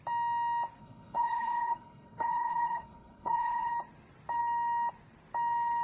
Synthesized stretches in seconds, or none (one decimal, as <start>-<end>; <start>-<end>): 0.8-3.7